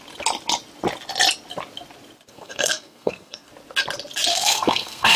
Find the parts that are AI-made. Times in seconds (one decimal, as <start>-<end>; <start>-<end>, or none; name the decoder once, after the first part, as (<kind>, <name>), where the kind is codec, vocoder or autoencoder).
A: 2.3-3.5 (codec, SNAC); 4.3-5.2